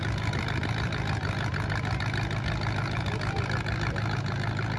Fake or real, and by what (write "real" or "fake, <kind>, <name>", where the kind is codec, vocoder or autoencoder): real